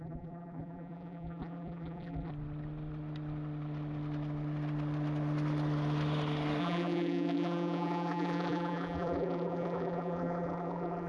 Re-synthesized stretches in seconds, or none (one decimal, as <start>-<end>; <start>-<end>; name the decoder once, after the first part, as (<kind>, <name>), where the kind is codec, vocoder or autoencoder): 0.0-2.3 (vocoder, BigVGAN v2); 6.6-11.1